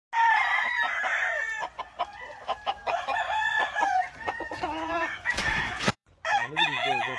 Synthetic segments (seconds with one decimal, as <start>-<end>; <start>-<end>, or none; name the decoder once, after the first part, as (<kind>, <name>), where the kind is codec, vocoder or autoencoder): 1.1-1.8 (vocoder, Vocos); 2.8-7.2